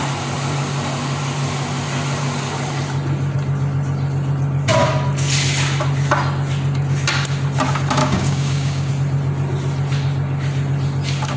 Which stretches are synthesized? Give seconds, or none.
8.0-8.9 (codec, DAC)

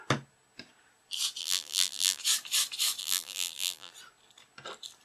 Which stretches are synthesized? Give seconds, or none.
1.4-2.2 (vocoder, BigVGAN v2); 3.0-3.9

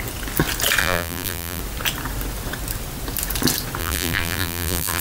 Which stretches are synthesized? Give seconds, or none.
0.8-1.6 (vocoder, BigVGAN v2); 3.8-5.0

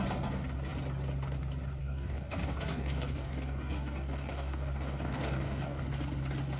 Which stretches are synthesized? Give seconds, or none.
1.8-5.8 (codec, DAC)

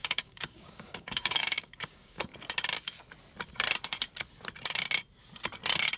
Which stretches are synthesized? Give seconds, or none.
0.0-2.3 (codec, DAC)